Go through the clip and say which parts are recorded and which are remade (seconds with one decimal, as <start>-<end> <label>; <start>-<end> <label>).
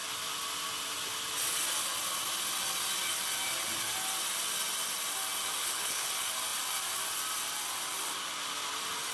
0.0-5.6 recorded; 5.6-6.1 remade; 6.1-9.1 recorded